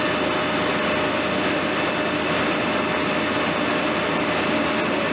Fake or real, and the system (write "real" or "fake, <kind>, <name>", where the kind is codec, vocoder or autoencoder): real